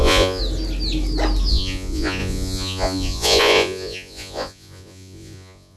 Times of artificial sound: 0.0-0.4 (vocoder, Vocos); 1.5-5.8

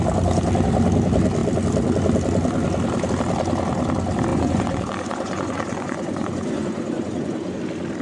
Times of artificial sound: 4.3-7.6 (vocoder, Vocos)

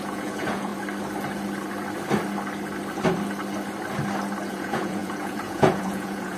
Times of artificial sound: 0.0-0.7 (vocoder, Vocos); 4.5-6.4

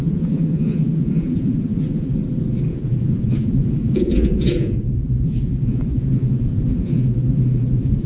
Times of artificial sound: 0.0-2.2 (vocoder, Vocos); 2.7-8.1

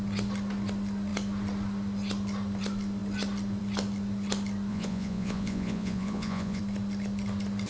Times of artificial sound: 4.7-6.6 (vocoder, Vocos)

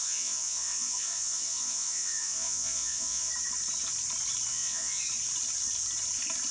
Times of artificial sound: 0.0-3.3 (vocoder, Vocos); 4.5-5.0